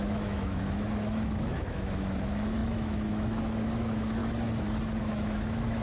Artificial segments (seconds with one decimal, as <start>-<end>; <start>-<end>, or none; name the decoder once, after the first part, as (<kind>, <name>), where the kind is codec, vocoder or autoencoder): 0.0-4.2 (autoencoder, DAC-VAE); 5.0-5.8